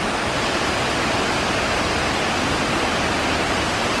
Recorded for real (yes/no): no